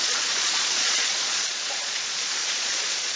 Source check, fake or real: fake